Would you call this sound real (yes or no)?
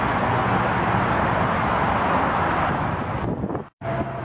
yes